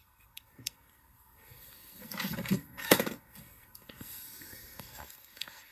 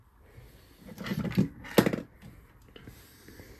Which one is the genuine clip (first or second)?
second